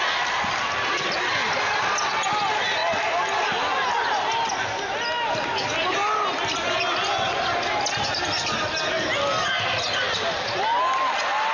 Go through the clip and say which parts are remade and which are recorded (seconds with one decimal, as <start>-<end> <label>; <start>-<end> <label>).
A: 0.0-11.5 recorded